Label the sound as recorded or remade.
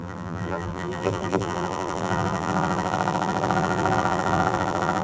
remade